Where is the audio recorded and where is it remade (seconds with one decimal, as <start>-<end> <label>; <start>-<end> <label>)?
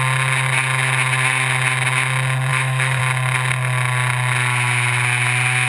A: 0.0-2.5 recorded; 2.5-3.0 remade; 3.0-5.7 recorded